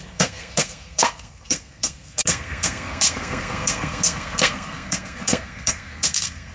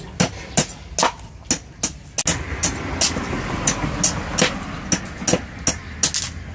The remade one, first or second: first